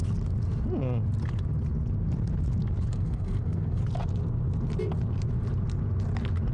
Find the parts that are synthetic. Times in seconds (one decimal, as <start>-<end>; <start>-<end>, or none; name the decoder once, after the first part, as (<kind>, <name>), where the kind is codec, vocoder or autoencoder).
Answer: 2.9-3.8 (codec, SNAC)